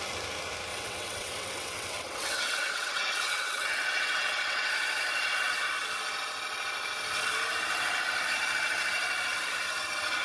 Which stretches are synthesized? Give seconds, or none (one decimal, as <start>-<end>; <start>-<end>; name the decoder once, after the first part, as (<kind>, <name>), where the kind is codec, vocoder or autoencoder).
0.7-4.7 (vocoder, WaveNeXt)